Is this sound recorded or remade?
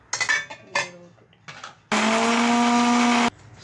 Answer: recorded